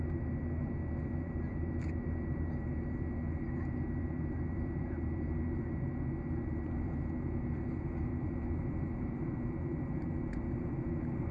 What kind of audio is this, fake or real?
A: fake